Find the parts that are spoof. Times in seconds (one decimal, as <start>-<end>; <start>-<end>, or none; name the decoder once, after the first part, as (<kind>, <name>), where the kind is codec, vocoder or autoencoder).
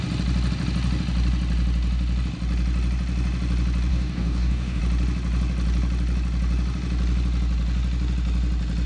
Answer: 3.9-4.8 (codec, DAC)